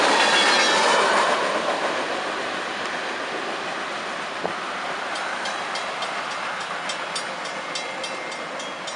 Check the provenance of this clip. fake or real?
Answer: real